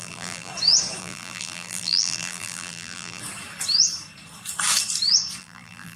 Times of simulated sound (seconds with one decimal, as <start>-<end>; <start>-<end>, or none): 0.0-0.5; 1.0-3.2; 5.4-6.0